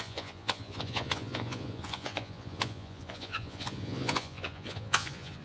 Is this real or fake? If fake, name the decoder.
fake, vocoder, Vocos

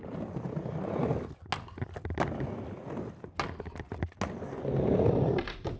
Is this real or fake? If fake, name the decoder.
real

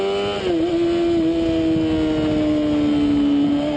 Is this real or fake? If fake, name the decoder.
real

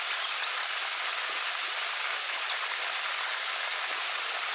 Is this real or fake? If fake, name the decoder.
real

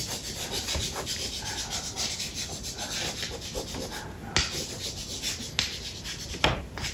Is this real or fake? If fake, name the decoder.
real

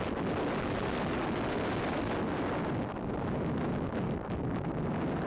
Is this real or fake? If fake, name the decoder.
real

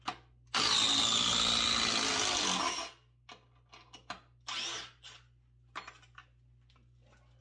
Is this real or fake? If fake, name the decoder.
real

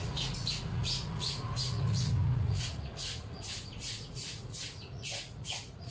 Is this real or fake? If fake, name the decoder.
fake, vocoder, Vocos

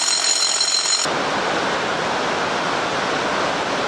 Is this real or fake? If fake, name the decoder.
real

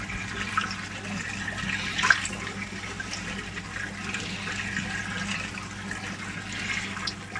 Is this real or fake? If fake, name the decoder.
real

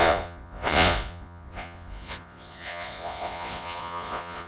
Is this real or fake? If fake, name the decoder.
fake, vocoder, Vocos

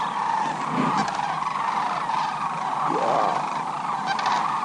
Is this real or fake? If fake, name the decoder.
real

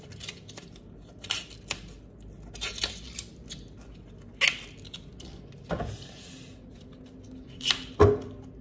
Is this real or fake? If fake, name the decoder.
real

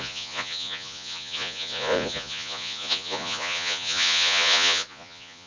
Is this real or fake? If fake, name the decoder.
fake, vocoder, Vocos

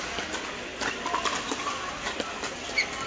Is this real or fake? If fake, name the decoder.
real